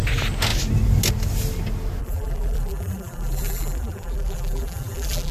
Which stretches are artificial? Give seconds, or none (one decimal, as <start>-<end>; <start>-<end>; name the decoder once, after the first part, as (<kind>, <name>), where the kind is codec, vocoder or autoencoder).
2.0-5.3 (vocoder, BigVGAN v2)